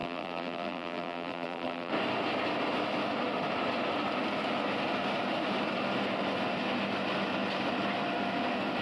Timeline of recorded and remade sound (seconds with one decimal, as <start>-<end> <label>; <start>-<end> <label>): 0.0-1.9 remade; 1.9-8.8 recorded